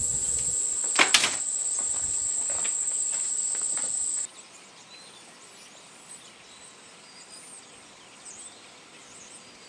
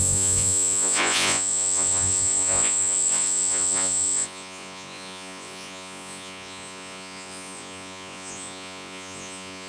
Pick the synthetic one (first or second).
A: second